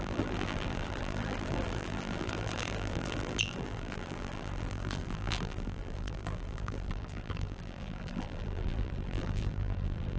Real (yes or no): no